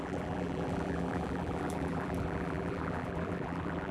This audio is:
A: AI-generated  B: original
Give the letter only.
A